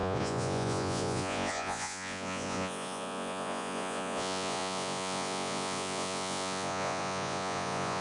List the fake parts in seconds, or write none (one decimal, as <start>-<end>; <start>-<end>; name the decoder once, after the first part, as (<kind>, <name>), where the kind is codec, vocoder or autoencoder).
0.0-8.0 (vocoder, Vocos)